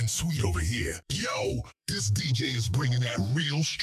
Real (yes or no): no